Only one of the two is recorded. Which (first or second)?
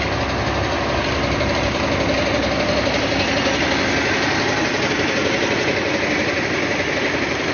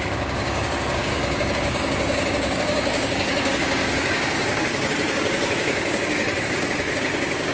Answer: first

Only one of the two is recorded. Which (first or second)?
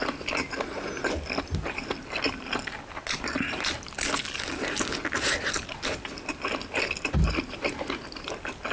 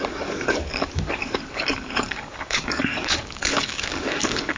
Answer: first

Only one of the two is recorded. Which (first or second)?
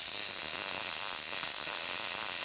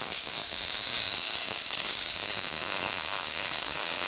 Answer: first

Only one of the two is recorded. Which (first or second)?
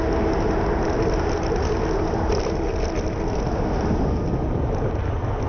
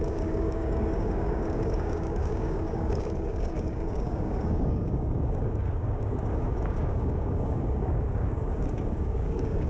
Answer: first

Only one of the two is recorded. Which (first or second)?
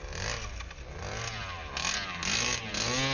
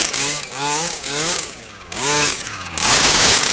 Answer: first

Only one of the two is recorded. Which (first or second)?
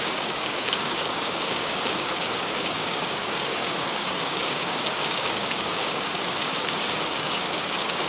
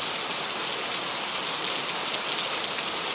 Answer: second